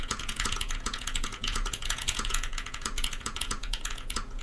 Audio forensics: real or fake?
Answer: fake